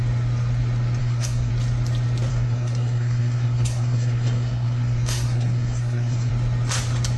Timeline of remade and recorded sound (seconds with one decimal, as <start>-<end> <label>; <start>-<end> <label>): 0.0-1.0 recorded; 1.0-1.5 remade; 1.5-2.3 recorded; 2.3-6.3 remade; 6.3-7.2 recorded